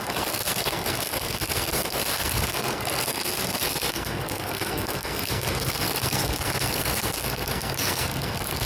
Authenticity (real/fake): fake